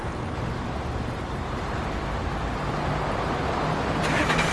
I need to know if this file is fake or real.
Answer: fake